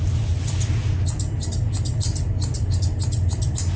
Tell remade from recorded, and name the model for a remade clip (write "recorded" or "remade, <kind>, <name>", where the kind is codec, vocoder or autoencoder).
recorded